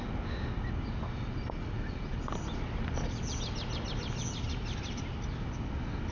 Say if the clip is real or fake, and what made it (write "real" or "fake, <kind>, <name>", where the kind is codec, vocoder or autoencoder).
real